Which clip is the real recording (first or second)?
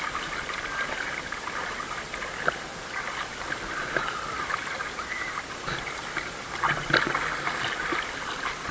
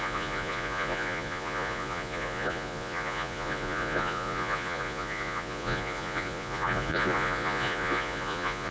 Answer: first